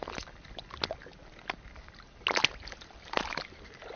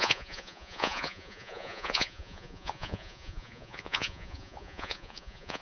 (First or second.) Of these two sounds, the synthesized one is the second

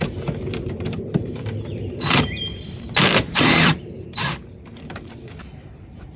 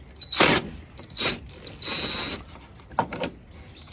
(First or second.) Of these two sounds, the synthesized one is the first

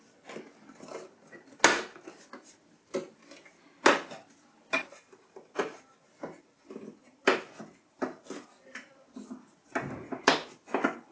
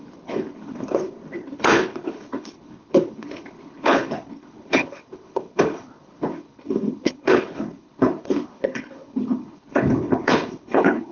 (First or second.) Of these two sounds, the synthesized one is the second